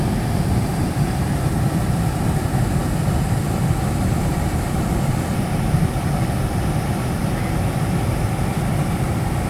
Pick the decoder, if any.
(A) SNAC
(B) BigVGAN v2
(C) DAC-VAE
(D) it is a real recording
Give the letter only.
D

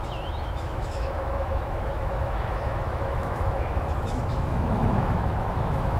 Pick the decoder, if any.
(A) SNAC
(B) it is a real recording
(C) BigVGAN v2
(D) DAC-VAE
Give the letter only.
D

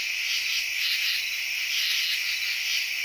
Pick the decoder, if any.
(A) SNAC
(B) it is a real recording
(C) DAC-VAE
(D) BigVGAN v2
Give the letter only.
B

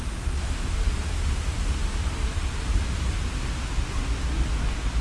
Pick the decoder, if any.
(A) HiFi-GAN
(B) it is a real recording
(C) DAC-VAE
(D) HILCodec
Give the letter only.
B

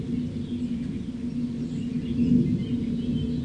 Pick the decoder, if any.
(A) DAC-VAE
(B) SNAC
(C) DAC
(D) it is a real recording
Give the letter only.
D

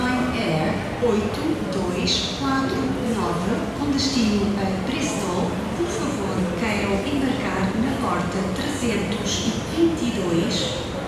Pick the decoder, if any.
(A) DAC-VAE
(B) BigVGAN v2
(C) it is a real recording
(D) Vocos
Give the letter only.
C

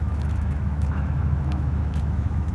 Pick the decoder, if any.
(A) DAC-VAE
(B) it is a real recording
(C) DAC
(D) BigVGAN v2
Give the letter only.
A